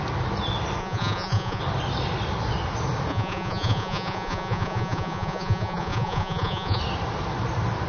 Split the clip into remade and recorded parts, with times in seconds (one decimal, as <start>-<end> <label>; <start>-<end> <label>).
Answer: 0.0-0.8 recorded; 0.8-1.6 remade; 1.6-3.1 recorded; 3.1-6.8 remade; 6.8-7.9 recorded